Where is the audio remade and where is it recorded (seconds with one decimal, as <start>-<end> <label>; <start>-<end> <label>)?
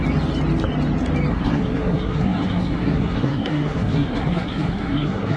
0.0-1.3 recorded; 1.3-5.4 remade